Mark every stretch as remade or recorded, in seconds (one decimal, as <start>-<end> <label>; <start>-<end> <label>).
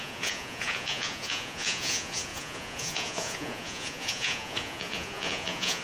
0.0-5.8 remade